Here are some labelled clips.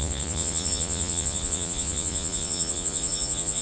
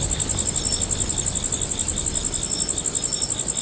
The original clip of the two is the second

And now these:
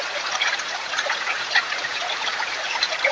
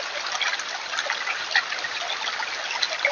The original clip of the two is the second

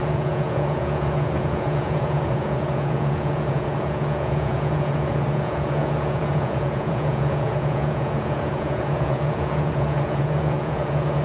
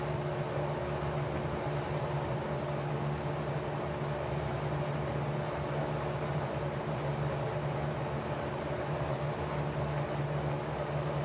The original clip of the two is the second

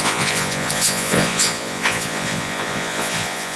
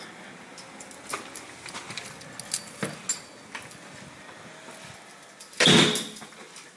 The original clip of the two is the second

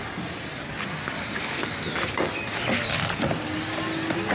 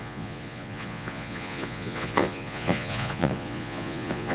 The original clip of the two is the first